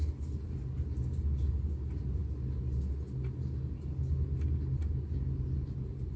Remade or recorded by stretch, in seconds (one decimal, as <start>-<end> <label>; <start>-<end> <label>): 0.0-6.2 recorded